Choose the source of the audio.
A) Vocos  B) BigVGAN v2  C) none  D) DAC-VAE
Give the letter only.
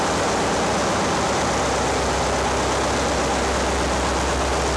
C